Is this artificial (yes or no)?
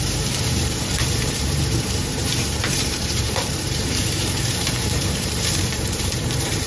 yes